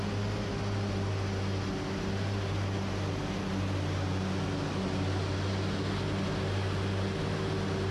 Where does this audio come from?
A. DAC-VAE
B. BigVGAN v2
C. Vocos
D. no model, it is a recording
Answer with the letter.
D